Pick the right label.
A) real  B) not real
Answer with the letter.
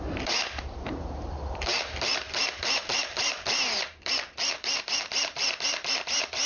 B